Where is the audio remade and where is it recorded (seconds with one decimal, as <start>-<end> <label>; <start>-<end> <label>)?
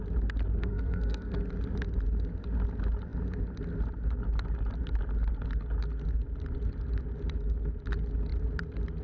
0.0-0.6 recorded; 0.6-1.4 remade; 1.4-9.0 recorded